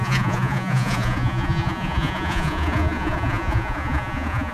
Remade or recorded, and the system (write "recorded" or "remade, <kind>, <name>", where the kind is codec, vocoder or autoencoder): remade, vocoder, Vocos